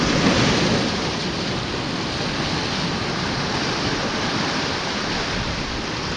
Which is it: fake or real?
real